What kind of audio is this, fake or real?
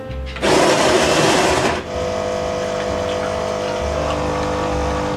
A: real